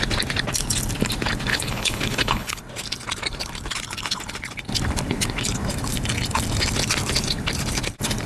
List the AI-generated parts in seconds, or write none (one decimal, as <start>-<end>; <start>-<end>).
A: 1.5-2.6